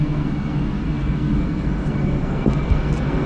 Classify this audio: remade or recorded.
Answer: remade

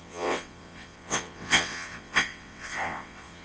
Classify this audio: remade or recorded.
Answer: remade